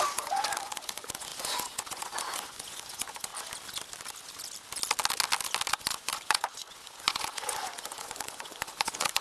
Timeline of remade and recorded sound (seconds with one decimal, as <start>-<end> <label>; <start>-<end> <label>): 0.0-3.3 remade; 3.3-5.7 recorded; 5.7-9.2 remade

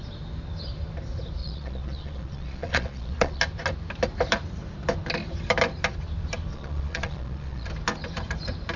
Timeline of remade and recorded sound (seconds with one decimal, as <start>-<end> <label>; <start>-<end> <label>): 0.0-1.4 recorded; 1.4-3.4 remade; 3.4-6.5 recorded; 6.5-7.7 remade; 7.7-8.8 recorded

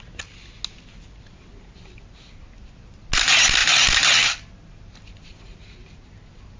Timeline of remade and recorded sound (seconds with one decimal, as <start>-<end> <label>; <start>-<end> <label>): 0.0-6.6 recorded

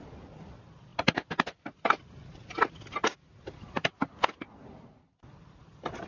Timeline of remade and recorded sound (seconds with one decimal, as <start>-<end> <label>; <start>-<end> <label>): 0.0-6.1 recorded